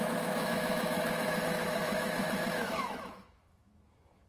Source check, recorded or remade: remade